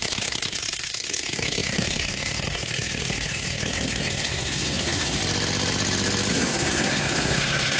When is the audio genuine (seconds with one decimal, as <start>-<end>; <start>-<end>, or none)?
5.2-6.3